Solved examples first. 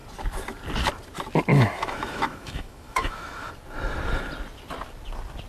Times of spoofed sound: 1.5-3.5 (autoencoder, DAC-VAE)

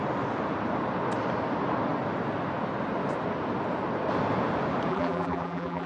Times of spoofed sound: 4.9-5.9 (vocoder, BigVGAN v2)